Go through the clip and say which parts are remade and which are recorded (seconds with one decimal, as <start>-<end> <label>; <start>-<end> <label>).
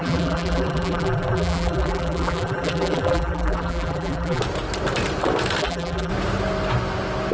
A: 0.0-4.4 remade; 4.4-5.6 recorded; 5.6-6.1 remade; 6.1-7.3 recorded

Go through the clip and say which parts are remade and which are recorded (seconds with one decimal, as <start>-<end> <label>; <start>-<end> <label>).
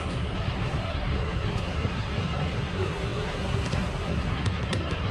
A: 0.0-5.1 remade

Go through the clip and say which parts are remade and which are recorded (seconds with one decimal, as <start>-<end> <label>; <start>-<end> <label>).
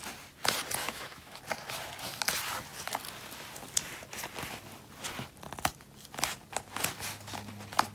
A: 0.0-0.8 recorded; 0.8-1.4 remade; 1.4-7.9 recorded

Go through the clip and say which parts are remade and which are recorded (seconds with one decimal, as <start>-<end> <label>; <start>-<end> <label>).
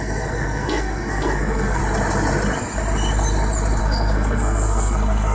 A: 0.0-1.8 remade; 1.8-3.8 recorded; 3.8-5.3 remade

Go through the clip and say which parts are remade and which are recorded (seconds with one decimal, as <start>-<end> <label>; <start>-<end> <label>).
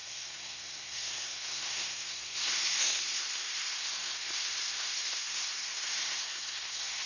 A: 0.0-7.1 remade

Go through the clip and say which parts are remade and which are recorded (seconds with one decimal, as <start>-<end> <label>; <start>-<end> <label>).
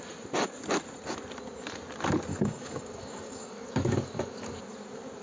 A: 0.0-2.3 recorded; 2.3-4.6 remade; 4.6-5.2 recorded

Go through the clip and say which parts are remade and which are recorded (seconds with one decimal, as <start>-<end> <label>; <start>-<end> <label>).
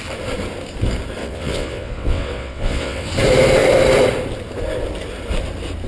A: 0.0-1.2 recorded; 1.2-3.1 remade; 3.1-5.9 recorded